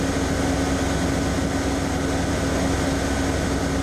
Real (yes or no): yes